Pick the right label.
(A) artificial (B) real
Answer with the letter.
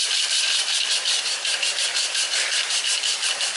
A